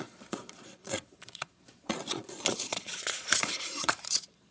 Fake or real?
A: fake